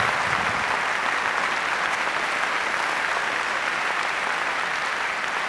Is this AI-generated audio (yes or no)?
no